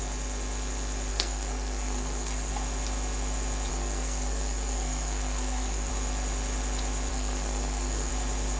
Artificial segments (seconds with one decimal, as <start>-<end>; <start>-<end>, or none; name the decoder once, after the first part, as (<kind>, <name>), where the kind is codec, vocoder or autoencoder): 1.1-2.5 (codec, SNAC); 3.7-5.9; 7.1-8.1